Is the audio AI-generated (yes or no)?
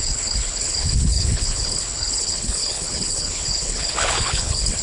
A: yes